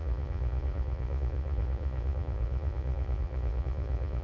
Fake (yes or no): yes